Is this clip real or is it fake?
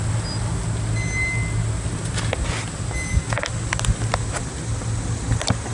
real